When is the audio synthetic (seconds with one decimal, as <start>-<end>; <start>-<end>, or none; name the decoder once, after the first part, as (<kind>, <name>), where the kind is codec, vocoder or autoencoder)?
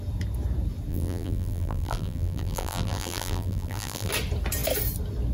0.9-4.1 (vocoder, BigVGAN v2)